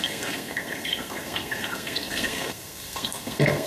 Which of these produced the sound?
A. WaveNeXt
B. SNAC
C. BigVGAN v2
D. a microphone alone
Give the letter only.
B